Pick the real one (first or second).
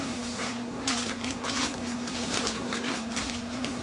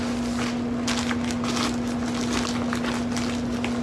second